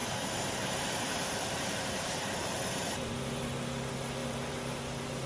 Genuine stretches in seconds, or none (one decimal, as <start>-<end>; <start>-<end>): 3.1-4.2; 4.8-5.3